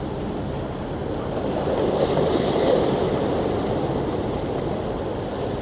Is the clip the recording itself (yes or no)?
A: yes